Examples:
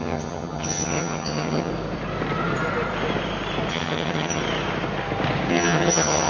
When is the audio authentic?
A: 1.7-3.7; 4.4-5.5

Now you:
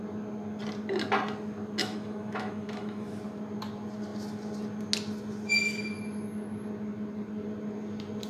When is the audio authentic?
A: 0.0-1.8; 3.2-8.3